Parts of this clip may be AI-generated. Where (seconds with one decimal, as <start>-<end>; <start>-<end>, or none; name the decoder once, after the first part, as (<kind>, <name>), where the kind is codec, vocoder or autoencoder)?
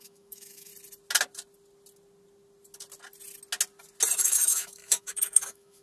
0.0-0.7 (autoencoder, DAC-VAE); 4.2-5.8